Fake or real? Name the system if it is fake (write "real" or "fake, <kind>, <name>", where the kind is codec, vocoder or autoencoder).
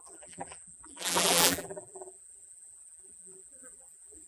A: fake, vocoder, BigVGAN v2